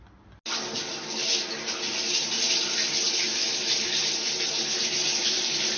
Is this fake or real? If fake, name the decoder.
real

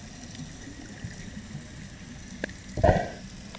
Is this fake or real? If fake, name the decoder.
real